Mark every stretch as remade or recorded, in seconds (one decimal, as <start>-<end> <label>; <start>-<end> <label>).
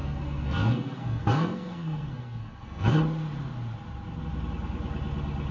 0.0-2.9 remade; 2.9-5.5 recorded